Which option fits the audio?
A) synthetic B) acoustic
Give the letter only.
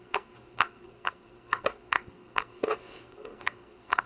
A